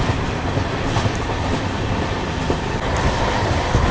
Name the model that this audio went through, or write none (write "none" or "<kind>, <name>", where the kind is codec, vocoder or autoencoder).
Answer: none